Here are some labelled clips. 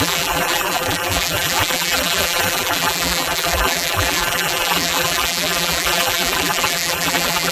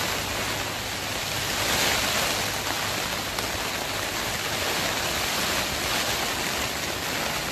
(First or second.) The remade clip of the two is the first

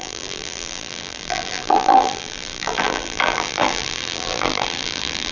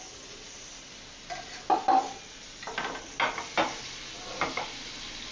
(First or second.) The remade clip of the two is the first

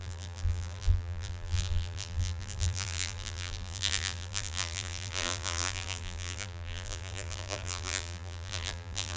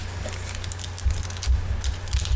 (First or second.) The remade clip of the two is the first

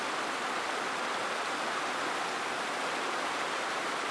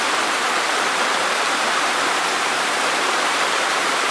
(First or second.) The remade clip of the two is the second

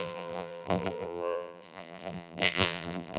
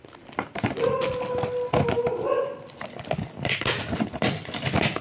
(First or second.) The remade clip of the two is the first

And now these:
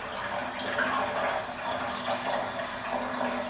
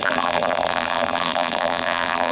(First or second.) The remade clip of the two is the second